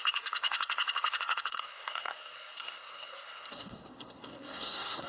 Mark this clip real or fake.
fake